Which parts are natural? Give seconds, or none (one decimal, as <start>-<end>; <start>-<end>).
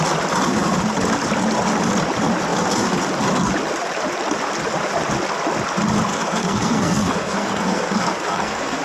0.0-6.1